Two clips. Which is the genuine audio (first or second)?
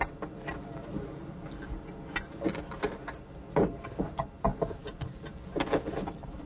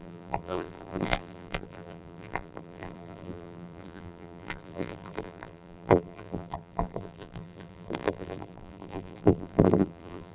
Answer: first